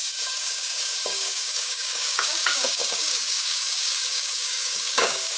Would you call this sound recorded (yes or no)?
no